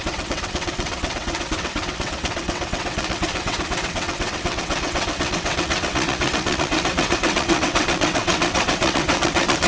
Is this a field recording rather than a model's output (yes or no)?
no